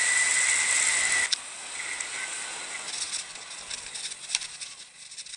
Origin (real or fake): real